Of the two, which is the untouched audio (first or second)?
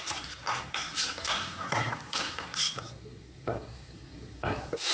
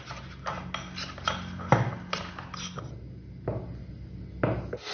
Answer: second